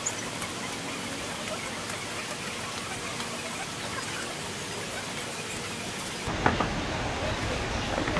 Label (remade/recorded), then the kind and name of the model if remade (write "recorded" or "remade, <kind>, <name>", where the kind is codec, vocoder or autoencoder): recorded